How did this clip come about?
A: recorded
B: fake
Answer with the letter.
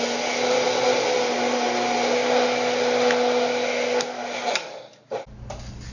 A